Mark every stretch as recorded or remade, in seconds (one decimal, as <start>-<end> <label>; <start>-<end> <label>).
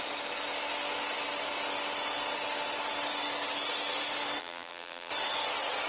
0.0-4.4 recorded; 4.4-5.1 remade; 5.1-5.9 recorded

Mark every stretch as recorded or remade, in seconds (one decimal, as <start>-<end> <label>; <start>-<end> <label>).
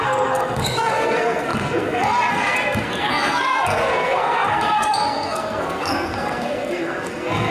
0.0-7.5 remade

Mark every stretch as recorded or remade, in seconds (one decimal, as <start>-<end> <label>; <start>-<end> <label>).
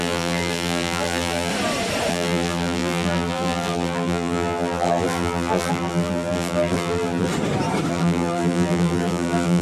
0.0-1.5 remade; 1.5-2.1 recorded; 2.1-7.3 remade; 7.3-7.9 recorded; 7.9-9.6 remade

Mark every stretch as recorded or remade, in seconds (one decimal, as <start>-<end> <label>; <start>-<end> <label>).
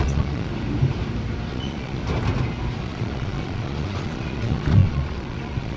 0.0-0.5 remade; 0.5-1.5 recorded; 1.5-2.0 remade; 2.0-2.8 recorded; 2.8-5.8 remade